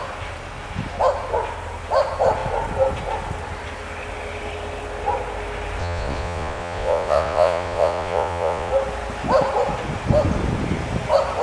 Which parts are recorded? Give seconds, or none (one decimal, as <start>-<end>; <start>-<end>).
0.0-5.8; 8.7-11.4